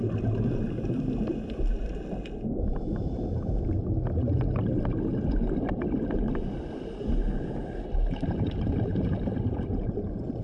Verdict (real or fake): real